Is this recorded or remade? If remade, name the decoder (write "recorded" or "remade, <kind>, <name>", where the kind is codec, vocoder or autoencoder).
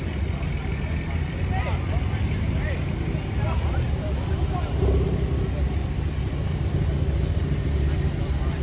recorded